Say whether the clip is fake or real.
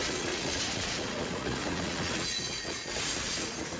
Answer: fake